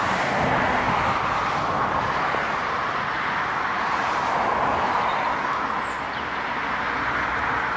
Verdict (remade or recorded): recorded